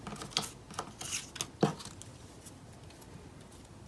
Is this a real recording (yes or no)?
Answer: yes